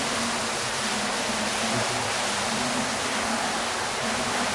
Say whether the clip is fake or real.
real